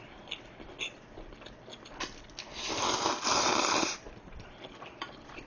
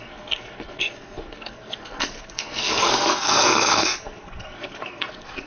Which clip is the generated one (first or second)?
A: second